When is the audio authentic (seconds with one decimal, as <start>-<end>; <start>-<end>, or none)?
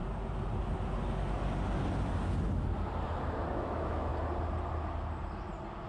0.0-3.5; 4.1-5.9